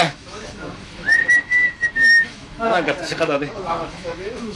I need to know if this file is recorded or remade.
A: remade